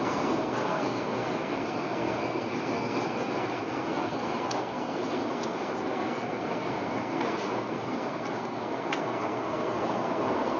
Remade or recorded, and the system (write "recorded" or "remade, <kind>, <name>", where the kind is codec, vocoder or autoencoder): remade, codec, SNAC